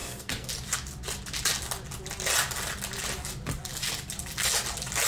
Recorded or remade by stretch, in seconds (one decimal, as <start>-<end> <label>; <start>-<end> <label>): 0.0-0.5 remade; 0.5-5.1 recorded